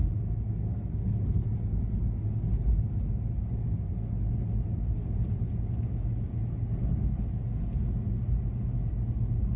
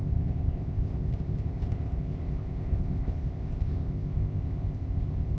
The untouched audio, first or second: first